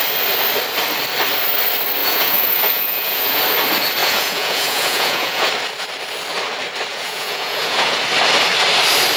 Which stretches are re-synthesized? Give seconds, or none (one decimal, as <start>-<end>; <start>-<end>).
2.0-3.4; 4.0-5.5; 6.9-8.0